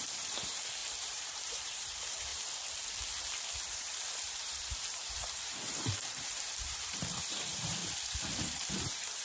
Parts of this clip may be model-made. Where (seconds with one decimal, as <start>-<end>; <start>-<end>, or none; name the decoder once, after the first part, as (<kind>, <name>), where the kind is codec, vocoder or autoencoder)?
0.0-2.3 (vocoder, BigVGAN v2); 3.5-7.8; 8.4-9.2